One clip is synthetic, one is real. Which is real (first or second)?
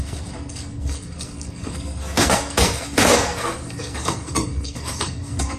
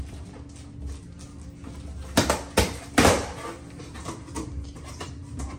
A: second